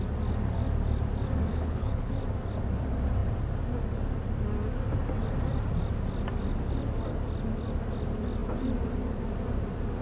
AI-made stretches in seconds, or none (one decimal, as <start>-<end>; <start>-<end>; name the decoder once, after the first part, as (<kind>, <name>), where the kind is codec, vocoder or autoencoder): 1.5-2.1 (codec, HILCodec)